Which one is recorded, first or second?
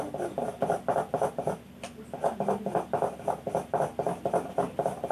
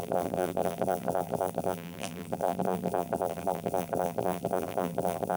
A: first